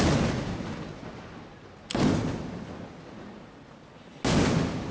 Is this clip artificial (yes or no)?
no